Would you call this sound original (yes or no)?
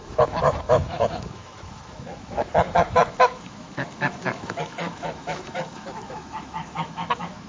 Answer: no